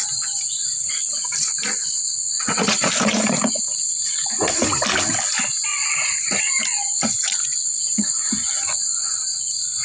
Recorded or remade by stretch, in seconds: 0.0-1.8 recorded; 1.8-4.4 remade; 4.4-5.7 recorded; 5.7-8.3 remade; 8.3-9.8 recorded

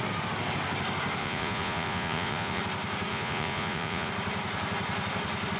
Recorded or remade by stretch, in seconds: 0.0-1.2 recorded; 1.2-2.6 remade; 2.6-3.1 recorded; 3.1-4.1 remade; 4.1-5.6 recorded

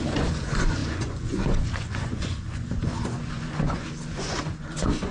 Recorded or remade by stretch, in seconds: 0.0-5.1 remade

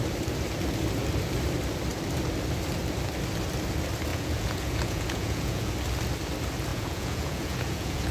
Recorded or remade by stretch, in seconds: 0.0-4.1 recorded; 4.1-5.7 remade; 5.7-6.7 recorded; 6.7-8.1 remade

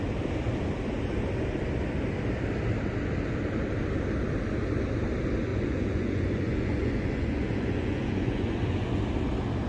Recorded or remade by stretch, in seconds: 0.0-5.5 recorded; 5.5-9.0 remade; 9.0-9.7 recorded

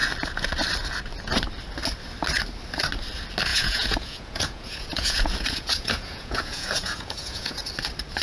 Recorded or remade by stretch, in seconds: 0.0-3.5 recorded; 3.5-7.6 remade; 7.6-8.2 recorded

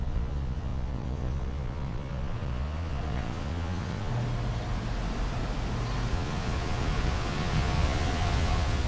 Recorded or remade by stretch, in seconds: 0.0-4.1 remade; 4.1-6.1 recorded; 6.1-8.9 remade